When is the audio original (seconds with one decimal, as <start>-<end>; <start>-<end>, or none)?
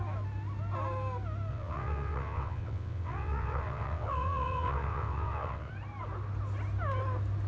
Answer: 0.0-1.5; 5.7-7.5